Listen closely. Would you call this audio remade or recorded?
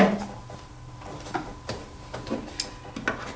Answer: recorded